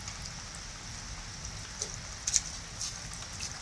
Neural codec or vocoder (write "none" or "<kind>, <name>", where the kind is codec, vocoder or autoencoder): none